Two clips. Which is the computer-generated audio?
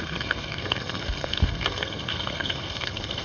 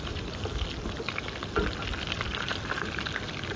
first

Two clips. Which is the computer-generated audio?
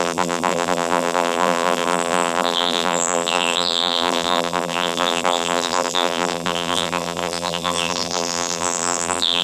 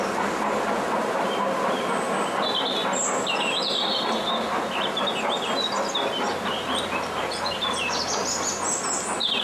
first